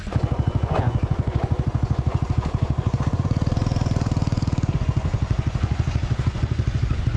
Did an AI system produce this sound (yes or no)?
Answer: yes